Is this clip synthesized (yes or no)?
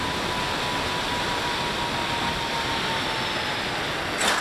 no